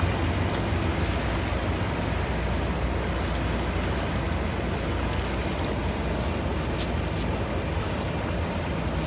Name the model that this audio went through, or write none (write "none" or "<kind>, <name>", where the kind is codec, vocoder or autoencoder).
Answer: none